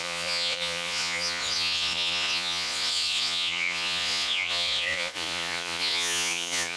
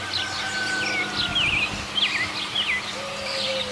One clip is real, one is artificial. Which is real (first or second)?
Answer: second